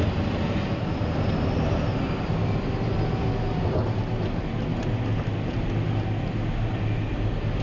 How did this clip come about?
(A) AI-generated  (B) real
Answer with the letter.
B